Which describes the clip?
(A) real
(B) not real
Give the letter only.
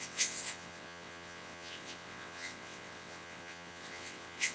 B